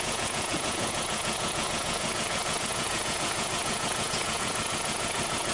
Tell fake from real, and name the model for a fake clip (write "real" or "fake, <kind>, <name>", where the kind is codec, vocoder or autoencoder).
fake, vocoder, Vocos